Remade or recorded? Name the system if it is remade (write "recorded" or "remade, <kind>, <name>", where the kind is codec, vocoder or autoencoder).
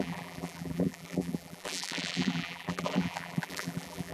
remade, vocoder, BigVGAN v2